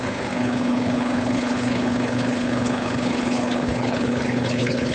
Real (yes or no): no